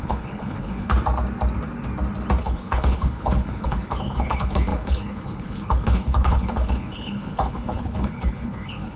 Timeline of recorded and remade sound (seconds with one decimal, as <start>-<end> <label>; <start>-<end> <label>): 0.0-0.9 remade; 0.9-2.4 recorded; 2.4-9.0 remade